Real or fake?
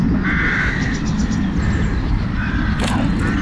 real